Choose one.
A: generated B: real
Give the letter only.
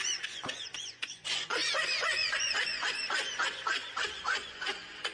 A